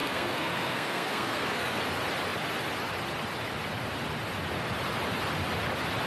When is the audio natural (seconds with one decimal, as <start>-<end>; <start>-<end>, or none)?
1.8-6.1